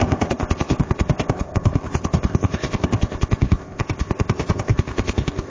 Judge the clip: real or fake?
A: fake